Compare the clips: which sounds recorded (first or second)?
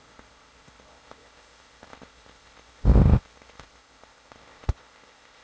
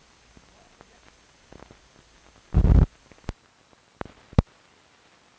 second